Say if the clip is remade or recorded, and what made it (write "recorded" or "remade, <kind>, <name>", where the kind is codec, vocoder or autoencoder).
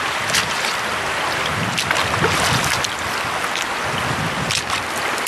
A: recorded